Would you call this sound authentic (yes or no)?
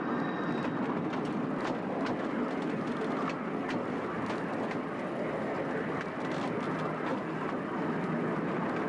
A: yes